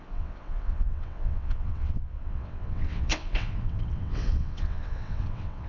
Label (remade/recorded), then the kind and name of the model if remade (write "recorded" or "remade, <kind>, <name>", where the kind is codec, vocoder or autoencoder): remade, vocoder, WaveNeXt